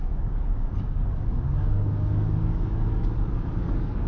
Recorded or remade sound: remade